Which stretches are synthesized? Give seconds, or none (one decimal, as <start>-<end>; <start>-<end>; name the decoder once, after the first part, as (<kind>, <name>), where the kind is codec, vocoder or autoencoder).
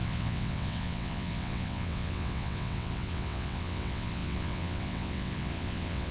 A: 0.0-6.1 (vocoder, WaveNeXt)